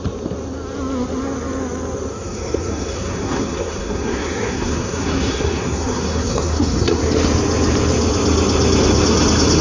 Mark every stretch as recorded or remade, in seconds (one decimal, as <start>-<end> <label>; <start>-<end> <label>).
0.0-2.1 recorded; 2.1-7.0 remade; 7.0-9.6 recorded

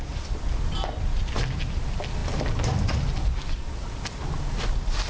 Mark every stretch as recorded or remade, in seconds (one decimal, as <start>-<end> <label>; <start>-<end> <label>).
0.0-5.1 recorded